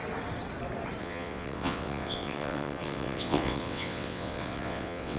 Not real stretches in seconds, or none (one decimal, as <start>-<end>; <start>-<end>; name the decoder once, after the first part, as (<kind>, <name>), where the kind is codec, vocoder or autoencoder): 1.0-5.2 (vocoder, WaveNeXt)